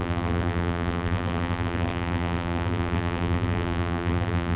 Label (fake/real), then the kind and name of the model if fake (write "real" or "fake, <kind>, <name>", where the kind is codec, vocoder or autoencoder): fake, vocoder, BigVGAN v2